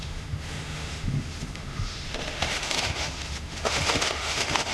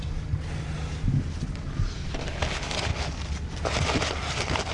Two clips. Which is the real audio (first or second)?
second